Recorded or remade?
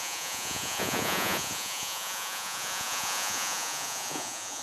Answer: remade